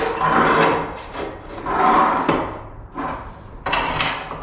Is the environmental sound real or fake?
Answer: real